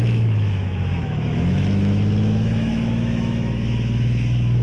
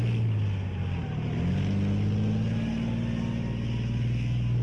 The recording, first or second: second